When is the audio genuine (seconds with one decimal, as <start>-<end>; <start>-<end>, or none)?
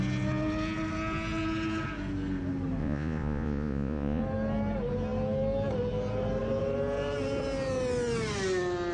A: 0.0-2.8; 4.2-8.9